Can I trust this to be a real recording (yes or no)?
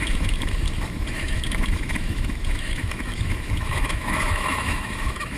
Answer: no